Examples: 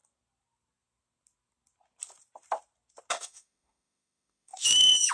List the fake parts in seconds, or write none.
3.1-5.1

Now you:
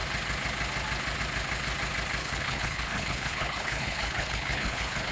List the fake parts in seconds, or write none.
2.2-5.1